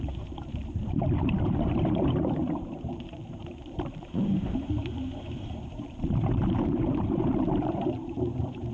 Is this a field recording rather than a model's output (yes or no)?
no